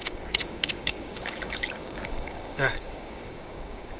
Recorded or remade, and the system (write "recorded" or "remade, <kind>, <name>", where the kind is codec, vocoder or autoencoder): remade, codec, DAC